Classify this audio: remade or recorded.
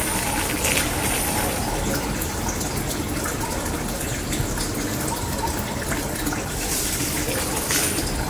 recorded